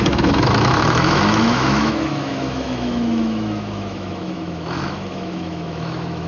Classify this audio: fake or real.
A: fake